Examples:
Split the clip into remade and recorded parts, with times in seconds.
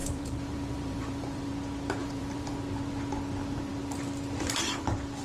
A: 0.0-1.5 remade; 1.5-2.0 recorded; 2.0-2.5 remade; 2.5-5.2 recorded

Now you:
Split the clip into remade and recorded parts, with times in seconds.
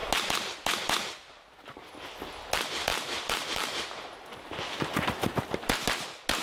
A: 0.0-2.9 recorded; 2.9-5.4 remade; 5.4-6.4 recorded